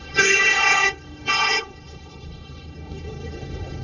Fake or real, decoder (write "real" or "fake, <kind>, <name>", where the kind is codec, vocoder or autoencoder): fake, codec, HILCodec